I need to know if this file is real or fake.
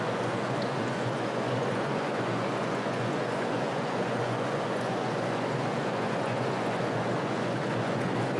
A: fake